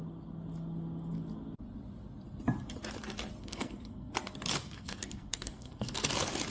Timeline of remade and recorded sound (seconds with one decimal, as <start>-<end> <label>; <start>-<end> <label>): 0.0-3.4 recorded; 3.4-4.1 remade; 4.1-4.6 recorded; 4.6-6.1 remade; 6.1-6.5 recorded